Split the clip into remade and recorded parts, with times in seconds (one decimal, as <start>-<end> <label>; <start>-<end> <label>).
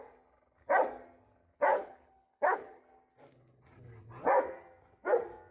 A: 0.0-1.7 recorded; 1.7-2.8 remade; 2.8-5.5 recorded